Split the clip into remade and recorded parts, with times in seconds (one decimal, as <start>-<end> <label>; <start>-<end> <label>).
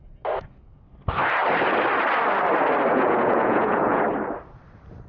0.0-2.9 recorded; 2.9-4.0 remade; 4.0-5.1 recorded